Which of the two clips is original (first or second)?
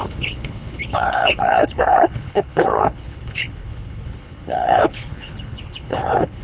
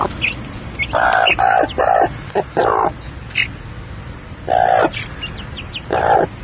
second